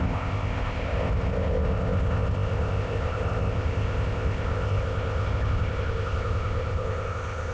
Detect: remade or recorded remade